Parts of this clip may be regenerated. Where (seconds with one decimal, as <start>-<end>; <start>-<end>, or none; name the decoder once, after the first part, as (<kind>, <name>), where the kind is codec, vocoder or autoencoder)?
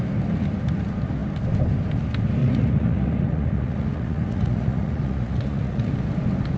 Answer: 2.4-5.9 (vocoder, Vocos)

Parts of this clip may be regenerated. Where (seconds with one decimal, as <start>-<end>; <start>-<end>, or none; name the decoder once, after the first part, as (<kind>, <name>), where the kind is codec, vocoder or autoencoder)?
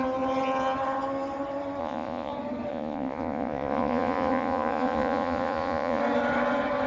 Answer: 1.8-2.3 (vocoder, Vocos); 2.7-6.0